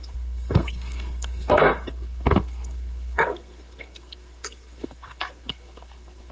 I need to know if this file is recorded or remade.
remade